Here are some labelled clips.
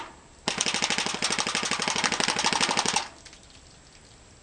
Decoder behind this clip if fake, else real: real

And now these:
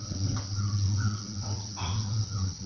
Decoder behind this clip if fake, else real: fake, vocoder, WaveNeXt